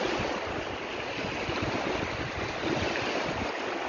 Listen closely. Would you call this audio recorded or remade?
recorded